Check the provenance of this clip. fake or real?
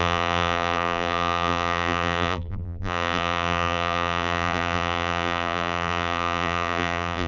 fake